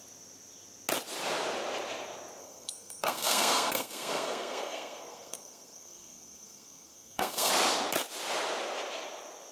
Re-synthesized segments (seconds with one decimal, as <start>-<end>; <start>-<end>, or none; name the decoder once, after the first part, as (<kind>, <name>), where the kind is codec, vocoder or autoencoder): 2.4-7.5 (codec, SNAC)